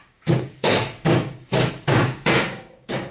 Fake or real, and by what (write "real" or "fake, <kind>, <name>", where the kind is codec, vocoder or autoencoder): fake, codec, DAC